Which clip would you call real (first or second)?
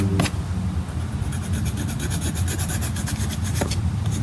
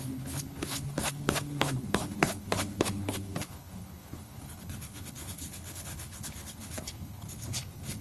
first